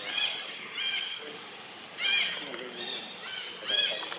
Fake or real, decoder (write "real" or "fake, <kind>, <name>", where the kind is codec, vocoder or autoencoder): real